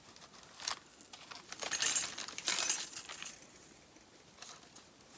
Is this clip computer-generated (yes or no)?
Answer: no